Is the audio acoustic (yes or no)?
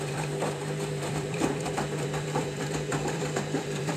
no